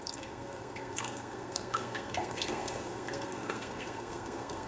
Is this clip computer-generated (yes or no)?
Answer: yes